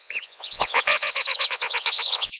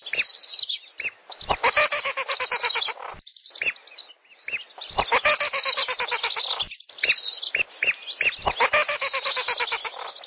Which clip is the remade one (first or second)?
first